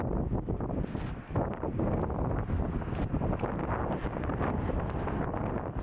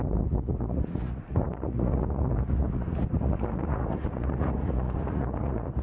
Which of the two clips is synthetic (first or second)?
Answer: second